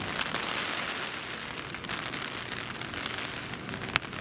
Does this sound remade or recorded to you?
recorded